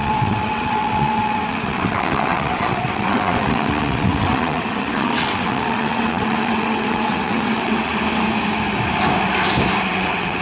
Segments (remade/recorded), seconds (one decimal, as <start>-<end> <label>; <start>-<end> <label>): 0.0-7.9 remade; 7.9-9.9 recorded; 9.9-10.4 remade